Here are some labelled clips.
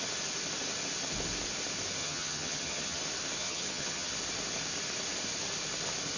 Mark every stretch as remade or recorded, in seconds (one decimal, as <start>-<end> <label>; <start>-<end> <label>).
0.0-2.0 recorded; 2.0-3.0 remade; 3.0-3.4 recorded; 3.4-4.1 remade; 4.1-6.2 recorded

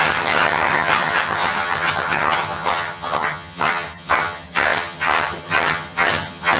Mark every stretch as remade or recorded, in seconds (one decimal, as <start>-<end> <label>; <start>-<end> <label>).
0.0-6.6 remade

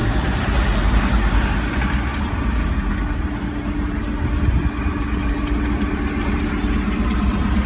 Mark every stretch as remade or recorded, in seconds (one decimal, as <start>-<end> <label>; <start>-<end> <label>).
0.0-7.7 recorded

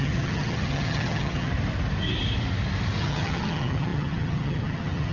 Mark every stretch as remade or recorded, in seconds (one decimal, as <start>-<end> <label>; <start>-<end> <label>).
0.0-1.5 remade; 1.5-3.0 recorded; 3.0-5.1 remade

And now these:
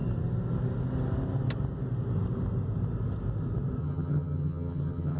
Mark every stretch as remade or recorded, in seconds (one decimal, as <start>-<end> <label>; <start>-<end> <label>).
0.0-3.8 recorded; 3.8-5.2 remade

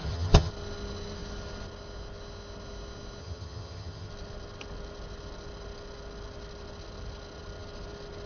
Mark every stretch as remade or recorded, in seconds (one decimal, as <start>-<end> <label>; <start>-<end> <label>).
0.0-0.5 remade; 0.5-3.2 recorded; 3.2-4.1 remade; 4.1-8.3 recorded

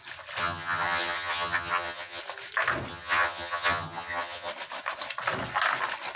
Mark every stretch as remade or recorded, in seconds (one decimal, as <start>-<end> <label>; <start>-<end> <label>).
0.0-0.4 recorded; 0.4-2.2 remade; 2.2-2.9 recorded; 2.9-4.5 remade; 4.5-6.2 recorded

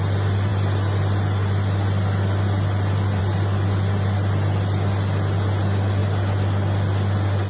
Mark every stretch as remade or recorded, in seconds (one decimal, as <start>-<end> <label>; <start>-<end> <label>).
0.0-7.5 recorded